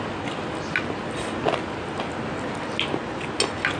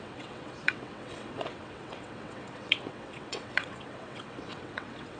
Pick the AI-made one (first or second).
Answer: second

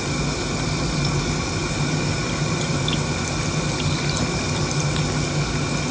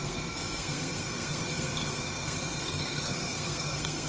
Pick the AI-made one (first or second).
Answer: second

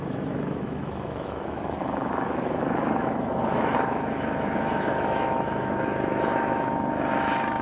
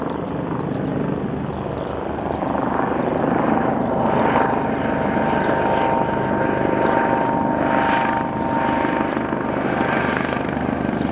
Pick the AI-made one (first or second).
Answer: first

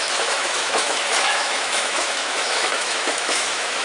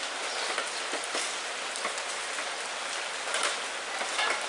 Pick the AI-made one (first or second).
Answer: first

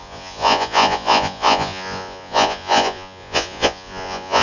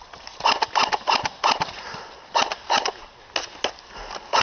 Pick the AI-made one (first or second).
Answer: first